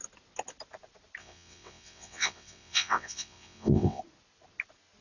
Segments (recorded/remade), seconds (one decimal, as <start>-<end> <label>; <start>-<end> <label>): 0.0-1.2 recorded; 1.2-4.0 remade; 4.0-5.0 recorded